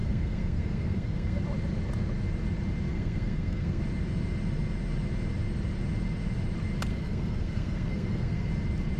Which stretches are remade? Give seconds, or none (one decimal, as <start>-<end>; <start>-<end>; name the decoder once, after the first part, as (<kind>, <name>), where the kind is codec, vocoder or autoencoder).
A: 0.0-1.4 (codec, SNAC); 2.9-3.8; 6.9-8.5